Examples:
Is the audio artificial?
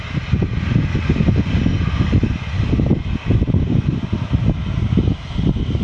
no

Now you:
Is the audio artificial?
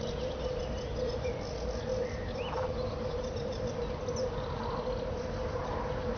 yes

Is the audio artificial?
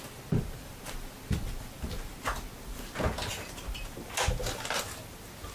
no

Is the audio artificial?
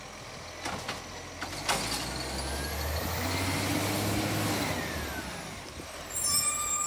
no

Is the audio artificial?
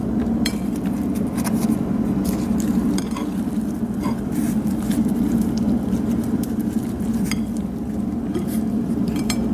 yes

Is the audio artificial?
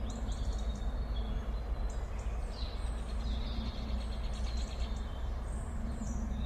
no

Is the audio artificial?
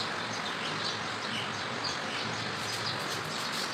no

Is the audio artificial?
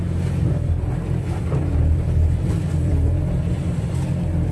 yes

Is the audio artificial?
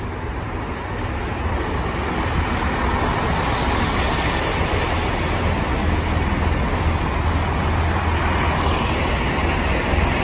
no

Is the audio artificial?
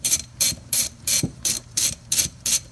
yes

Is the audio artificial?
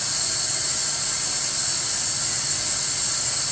no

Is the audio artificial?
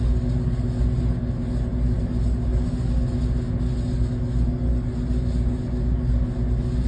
no